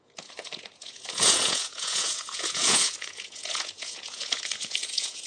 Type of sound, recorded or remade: remade